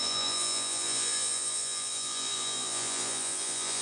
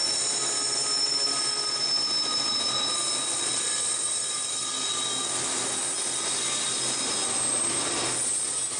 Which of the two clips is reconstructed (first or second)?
first